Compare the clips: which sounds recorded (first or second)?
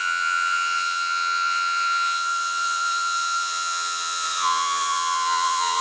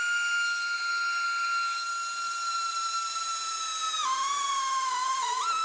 second